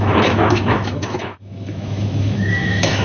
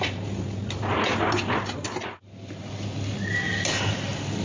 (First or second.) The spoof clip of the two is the first